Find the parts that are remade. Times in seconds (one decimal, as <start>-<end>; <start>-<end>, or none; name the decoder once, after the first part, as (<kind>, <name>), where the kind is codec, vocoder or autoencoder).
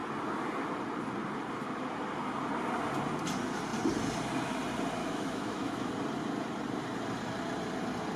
5.0-5.9 (autoencoder, DAC-VAE)